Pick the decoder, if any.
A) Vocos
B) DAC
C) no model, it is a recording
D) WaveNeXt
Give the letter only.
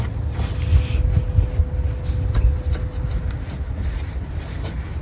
C